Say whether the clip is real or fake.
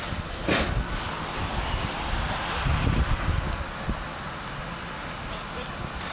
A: real